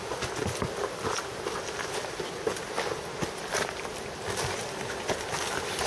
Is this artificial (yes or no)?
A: no